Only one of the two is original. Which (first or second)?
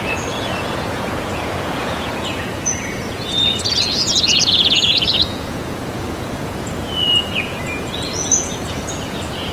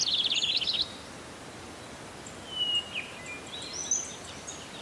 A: second